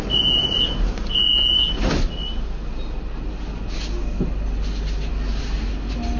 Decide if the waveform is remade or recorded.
recorded